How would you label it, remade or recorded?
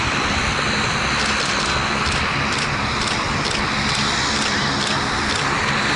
remade